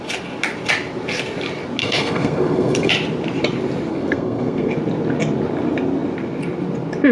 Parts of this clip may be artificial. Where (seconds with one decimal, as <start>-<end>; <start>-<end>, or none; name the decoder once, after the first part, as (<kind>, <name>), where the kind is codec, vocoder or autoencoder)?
1.8-2.9 (codec, SNAC); 3.9-4.7